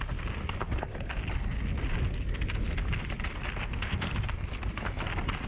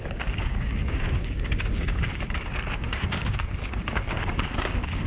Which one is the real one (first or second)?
first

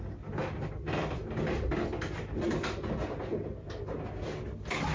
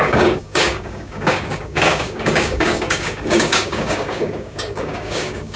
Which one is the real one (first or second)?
first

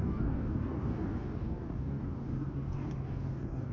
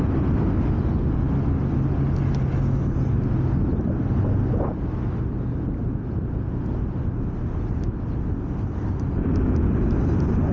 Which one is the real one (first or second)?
second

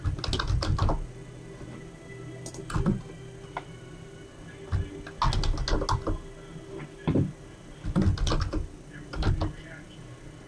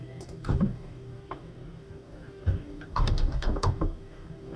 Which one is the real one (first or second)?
first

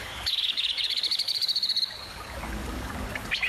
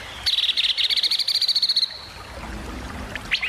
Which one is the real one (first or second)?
second